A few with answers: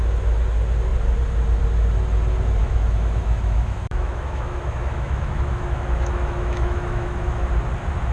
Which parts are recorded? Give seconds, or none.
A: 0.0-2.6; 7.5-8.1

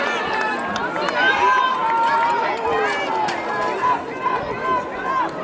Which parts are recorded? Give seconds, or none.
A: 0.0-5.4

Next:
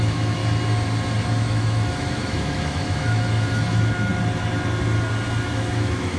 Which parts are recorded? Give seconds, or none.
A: 0.4-1.3; 4.1-5.4